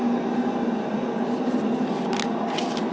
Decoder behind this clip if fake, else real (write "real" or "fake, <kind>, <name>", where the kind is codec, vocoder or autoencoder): real